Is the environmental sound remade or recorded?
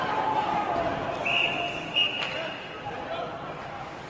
recorded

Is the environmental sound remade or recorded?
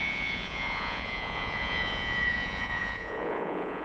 remade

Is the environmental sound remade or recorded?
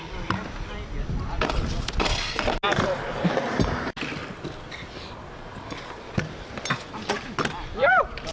recorded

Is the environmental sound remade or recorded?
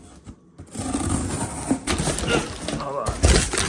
recorded